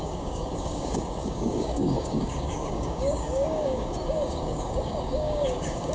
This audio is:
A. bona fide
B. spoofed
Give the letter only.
B